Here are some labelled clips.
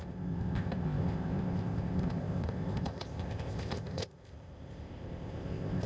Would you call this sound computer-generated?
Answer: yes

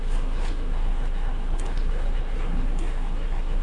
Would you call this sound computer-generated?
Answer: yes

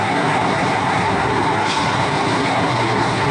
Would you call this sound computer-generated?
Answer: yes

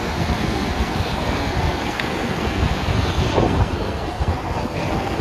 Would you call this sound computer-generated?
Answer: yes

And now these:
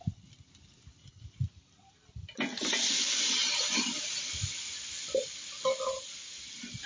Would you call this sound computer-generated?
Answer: no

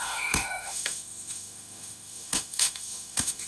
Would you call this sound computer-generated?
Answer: yes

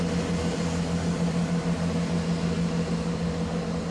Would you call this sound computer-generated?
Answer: no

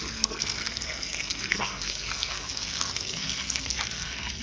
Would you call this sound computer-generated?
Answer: yes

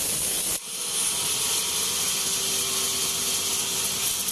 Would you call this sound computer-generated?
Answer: no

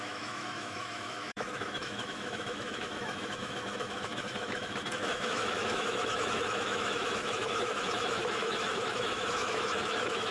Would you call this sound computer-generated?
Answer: yes